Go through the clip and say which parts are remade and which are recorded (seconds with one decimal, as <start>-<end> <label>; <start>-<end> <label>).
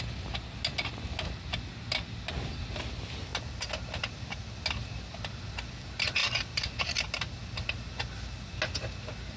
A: 0.0-6.2 recorded; 6.2-6.8 remade; 6.8-9.4 recorded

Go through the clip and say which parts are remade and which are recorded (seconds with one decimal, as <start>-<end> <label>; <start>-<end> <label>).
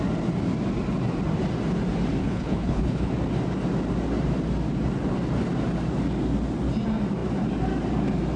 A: 0.0-2.2 recorded; 2.2-3.1 remade; 3.1-8.4 recorded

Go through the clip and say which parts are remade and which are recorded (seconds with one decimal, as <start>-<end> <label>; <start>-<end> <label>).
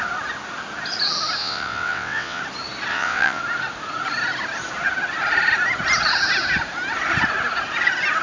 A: 0.0-1.4 recorded; 1.4-2.4 remade; 2.4-2.9 recorded; 2.9-3.4 remade; 3.4-8.2 recorded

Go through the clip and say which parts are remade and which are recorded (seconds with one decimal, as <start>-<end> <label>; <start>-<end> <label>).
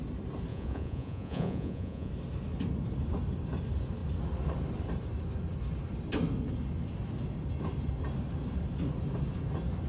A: 0.0-0.5 recorded; 0.5-2.1 remade; 2.1-9.9 recorded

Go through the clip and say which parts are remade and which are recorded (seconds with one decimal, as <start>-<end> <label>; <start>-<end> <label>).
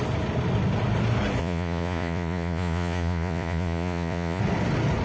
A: 0.0-1.4 recorded; 1.4-4.4 remade; 4.4-5.0 recorded